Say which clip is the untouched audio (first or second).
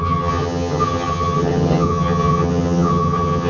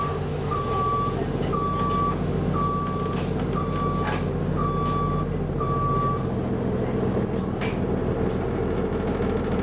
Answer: second